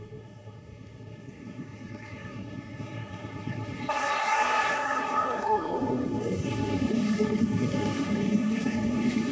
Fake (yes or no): yes